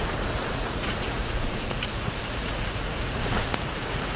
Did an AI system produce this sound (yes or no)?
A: yes